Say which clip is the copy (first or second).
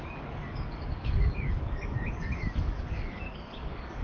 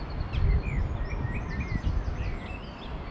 first